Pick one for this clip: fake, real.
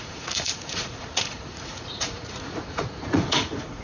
fake